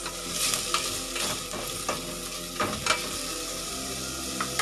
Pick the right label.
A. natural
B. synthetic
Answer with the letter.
A